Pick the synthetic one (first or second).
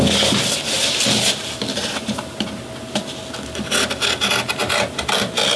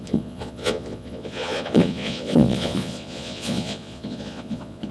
second